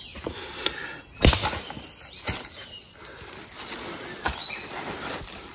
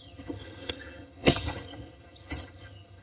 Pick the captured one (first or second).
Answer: first